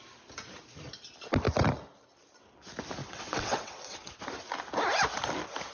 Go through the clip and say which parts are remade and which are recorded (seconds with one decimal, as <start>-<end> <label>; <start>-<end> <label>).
0.0-3.0 recorded; 3.0-4.2 remade; 4.2-5.7 recorded